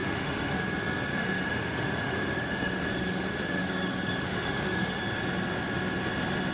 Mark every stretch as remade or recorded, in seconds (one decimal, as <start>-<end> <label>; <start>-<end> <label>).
0.0-0.6 remade; 0.6-1.1 recorded; 1.1-5.0 remade; 5.0-6.5 recorded